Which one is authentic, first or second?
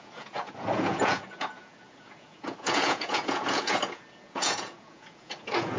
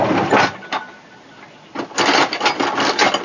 second